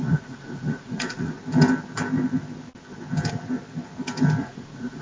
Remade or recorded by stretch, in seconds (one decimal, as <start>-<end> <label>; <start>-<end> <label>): 0.0-1.4 remade; 1.4-4.4 recorded; 4.4-5.0 remade